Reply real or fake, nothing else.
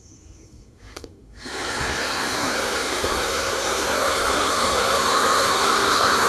fake